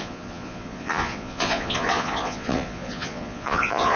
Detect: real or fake fake